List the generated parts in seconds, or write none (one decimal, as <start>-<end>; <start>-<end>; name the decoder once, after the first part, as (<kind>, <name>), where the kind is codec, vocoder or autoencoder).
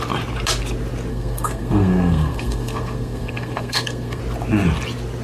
1.1-4.2 (codec, SNAC)